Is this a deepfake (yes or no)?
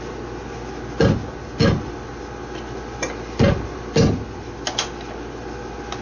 no